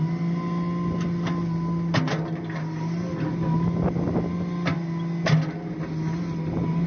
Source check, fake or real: real